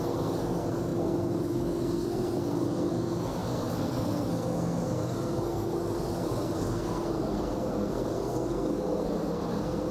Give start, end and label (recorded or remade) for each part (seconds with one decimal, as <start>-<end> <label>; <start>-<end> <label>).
0.0-9.9 remade